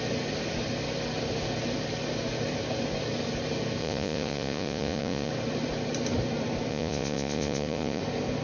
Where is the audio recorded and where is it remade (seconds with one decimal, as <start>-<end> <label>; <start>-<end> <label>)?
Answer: 0.0-3.8 recorded; 3.8-5.3 remade; 5.3-6.7 recorded; 6.7-8.0 remade; 8.0-8.4 recorded